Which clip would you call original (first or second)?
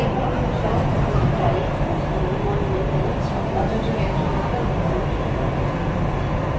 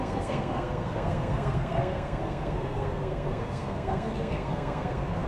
first